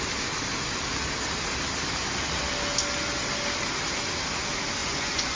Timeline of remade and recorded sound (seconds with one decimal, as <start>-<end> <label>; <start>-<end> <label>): 0.0-4.8 recorded; 4.8-5.4 remade